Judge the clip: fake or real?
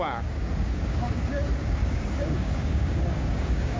fake